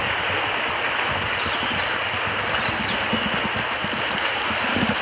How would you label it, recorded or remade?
recorded